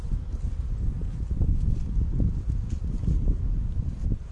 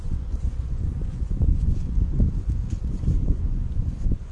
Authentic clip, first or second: first